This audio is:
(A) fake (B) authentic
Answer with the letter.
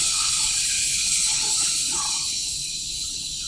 A